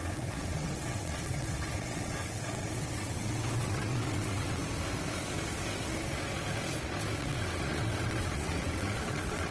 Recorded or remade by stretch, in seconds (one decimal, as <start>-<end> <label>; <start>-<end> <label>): 0.0-4.6 remade; 4.6-7.2 recorded; 7.2-9.5 remade